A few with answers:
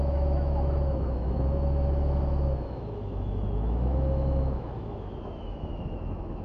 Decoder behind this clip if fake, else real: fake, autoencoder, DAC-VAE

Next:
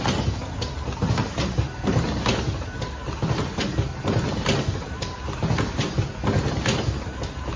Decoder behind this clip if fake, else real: real